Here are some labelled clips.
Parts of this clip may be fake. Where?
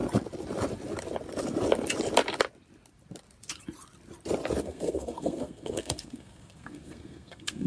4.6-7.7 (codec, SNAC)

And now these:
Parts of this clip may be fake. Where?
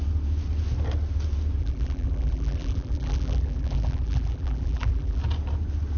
1.6-5.2 (vocoder, BigVGAN v2)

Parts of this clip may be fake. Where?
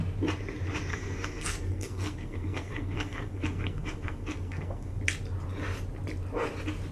0.9-5.0 (codec, SNAC)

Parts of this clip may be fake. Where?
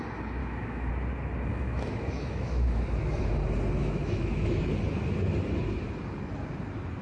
0.4-0.9 (autoencoder, DAC-VAE); 1.5-3.2; 3.8-4.6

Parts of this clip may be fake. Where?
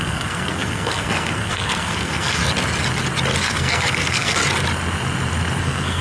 0.0-2.4 (codec, SNAC); 3.4-4.4; 5.6-6.0